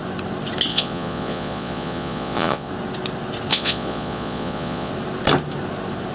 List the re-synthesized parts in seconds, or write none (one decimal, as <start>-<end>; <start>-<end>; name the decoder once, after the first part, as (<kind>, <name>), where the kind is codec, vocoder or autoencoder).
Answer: 0.7-2.7 (vocoder, Vocos); 3.5-4.9